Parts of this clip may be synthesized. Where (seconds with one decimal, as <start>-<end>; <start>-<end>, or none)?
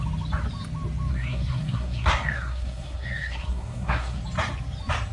1.1-4.2